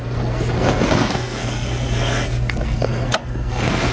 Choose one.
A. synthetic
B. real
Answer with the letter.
A